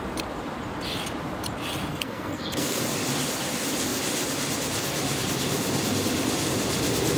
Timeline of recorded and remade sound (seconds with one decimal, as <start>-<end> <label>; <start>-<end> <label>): 0.0-1.9 recorded; 1.9-2.8 remade; 2.8-7.2 recorded